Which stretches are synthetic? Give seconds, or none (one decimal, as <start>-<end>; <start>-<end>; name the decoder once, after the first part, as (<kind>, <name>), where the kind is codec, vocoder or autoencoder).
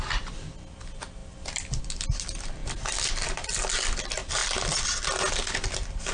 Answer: none